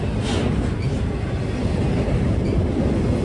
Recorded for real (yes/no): yes